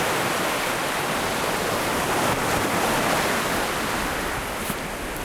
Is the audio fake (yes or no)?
no